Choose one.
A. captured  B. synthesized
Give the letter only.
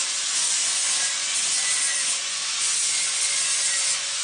B